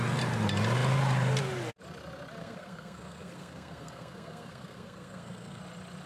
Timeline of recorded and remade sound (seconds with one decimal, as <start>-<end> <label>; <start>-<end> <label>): 0.0-2.4 recorded; 2.4-5.6 remade; 5.6-6.1 recorded